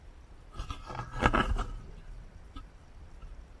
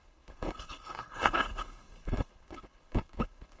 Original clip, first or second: first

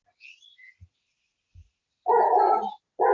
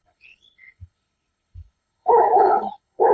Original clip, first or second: first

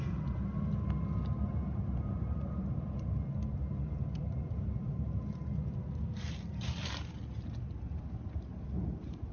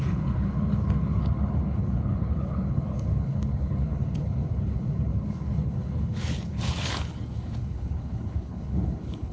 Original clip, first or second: first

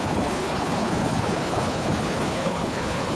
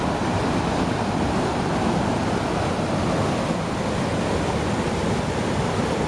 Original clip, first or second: second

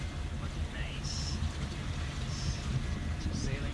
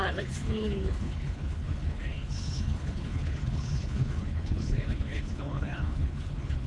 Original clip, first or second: first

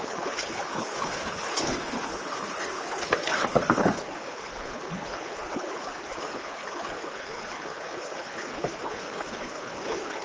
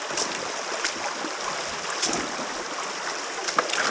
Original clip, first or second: second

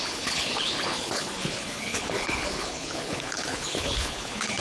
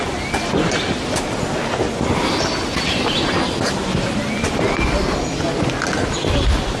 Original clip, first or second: second